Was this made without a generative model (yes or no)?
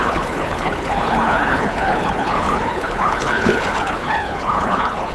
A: no